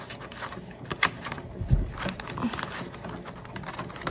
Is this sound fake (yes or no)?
no